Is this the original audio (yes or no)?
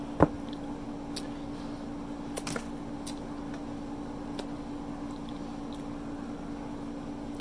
yes